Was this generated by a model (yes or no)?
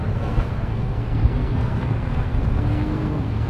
yes